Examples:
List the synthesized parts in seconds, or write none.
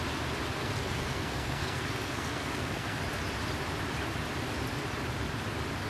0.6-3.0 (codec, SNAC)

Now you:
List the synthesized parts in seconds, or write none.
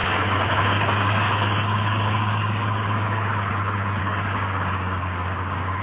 0.0-3.5 (codec, DAC); 4.0-5.8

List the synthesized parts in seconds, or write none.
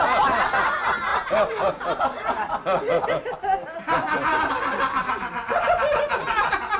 none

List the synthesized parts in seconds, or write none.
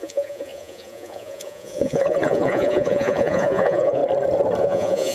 0.0-4.0 (vocoder, Vocos); 4.6-5.1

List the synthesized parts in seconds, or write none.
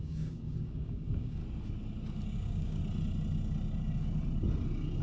0.0-1.4 (codec, DAC); 2.3-2.8